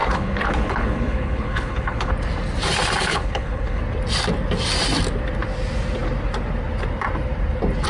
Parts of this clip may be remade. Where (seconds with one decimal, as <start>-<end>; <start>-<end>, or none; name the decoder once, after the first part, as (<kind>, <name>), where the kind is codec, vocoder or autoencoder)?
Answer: 0.0-2.1 (codec, HILCodec); 3.0-3.8